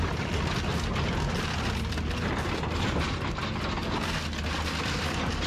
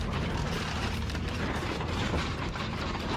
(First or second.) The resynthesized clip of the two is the second